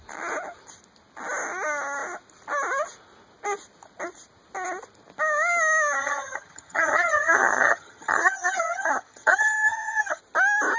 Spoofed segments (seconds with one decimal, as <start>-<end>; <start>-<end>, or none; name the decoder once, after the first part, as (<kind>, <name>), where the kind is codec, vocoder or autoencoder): 6.0-10.2 (vocoder, HiFi-GAN)